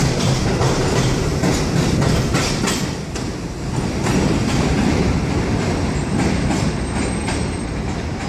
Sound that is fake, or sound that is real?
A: real